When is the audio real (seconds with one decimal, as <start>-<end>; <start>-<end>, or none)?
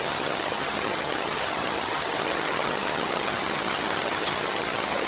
none